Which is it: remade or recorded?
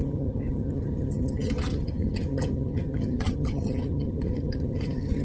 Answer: remade